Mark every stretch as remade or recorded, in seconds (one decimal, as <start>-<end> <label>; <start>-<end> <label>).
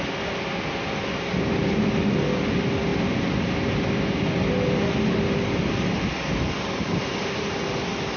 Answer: 0.0-8.2 recorded